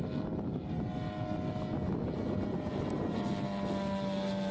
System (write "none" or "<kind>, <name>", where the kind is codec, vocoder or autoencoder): none